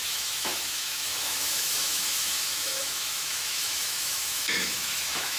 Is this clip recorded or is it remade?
remade